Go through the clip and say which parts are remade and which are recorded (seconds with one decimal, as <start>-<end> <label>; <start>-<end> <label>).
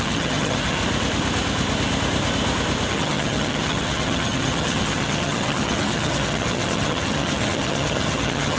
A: 0.0-0.8 remade; 0.8-2.9 recorded; 2.9-8.6 remade